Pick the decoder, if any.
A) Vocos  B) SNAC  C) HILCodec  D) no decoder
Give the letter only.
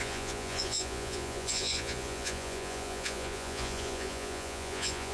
A